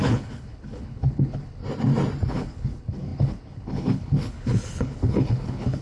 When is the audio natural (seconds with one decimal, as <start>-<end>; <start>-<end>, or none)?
1.6-2.3